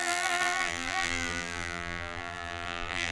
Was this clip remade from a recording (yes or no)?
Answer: yes